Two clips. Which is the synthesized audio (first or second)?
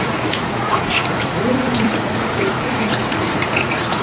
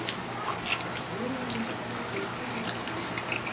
first